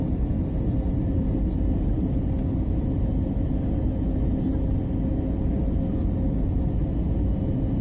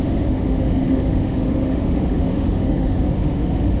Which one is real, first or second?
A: first